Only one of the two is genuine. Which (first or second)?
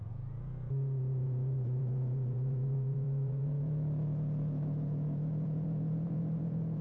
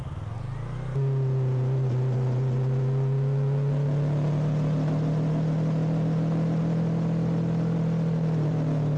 second